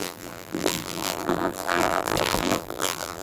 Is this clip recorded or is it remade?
remade